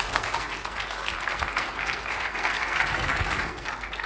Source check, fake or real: fake